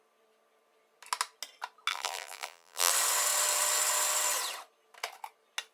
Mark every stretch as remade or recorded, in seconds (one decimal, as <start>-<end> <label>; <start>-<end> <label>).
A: 0.0-1.9 recorded; 1.9-2.9 remade; 2.9-5.7 recorded